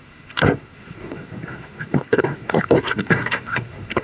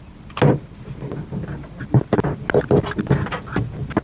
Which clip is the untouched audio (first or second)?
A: second